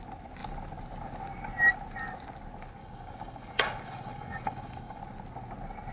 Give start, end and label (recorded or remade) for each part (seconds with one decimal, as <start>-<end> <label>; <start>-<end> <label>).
0.0-2.8 recorded; 2.8-5.0 remade; 5.0-5.9 recorded